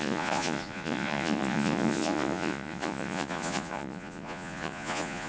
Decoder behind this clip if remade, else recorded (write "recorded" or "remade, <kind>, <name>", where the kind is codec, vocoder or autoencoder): remade, vocoder, Vocos